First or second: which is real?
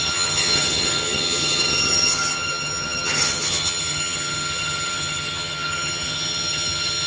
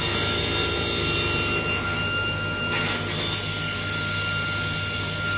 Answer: second